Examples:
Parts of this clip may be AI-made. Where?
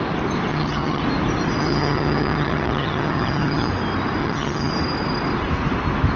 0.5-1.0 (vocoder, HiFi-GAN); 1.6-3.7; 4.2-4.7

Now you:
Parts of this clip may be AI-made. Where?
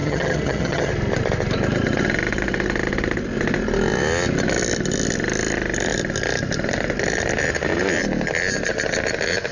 0.0-0.9 (vocoder, HiFi-GAN)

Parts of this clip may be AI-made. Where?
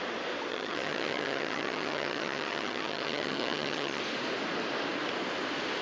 0.5-4.0 (vocoder, HiFi-GAN)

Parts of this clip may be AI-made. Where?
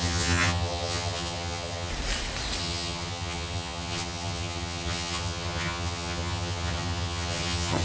0.0-1.9 (vocoder, HiFi-GAN); 2.6-7.8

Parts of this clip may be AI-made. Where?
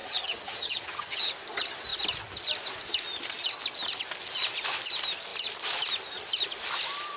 0.0-1.2 (vocoder, HiFi-GAN)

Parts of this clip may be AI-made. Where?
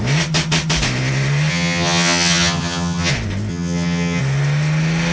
1.5-3.1 (vocoder, HiFi-GAN); 3.5-4.2